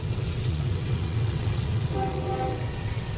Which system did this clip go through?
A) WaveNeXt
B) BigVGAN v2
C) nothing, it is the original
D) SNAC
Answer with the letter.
A